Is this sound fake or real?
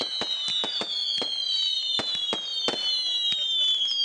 real